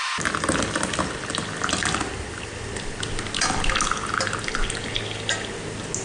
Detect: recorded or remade recorded